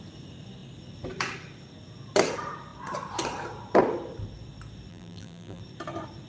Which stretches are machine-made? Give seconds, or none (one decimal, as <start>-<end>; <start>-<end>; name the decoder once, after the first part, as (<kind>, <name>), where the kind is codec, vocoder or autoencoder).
4.9-5.6 (vocoder, BigVGAN v2)